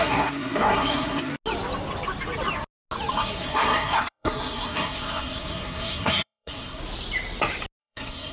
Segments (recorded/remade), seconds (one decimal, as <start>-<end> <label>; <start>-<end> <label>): 0.0-1.3 remade; 1.3-3.1 recorded; 3.1-6.8 remade; 6.8-7.8 recorded; 7.8-8.3 remade